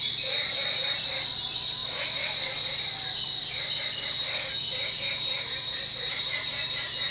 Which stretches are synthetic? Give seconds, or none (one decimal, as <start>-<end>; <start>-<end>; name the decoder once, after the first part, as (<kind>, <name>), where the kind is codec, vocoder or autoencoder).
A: none